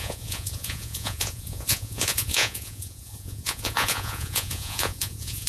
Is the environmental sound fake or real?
fake